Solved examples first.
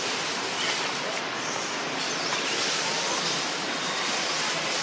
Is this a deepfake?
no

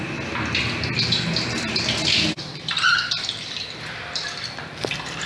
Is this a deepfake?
no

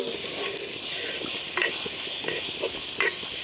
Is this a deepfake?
no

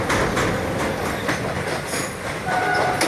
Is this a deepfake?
no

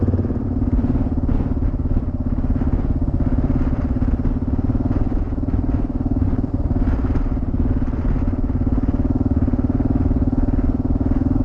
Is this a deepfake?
no